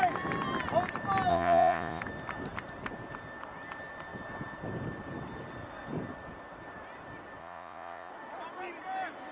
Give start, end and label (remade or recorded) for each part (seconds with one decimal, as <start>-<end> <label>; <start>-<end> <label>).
0.0-1.3 recorded; 1.3-2.0 remade; 2.0-7.4 recorded; 7.4-8.1 remade; 8.1-9.3 recorded